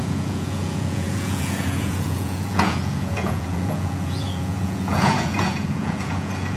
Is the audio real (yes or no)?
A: no